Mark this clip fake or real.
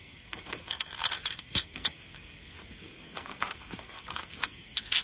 fake